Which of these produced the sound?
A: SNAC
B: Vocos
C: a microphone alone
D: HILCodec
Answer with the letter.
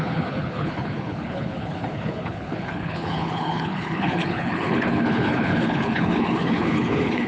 D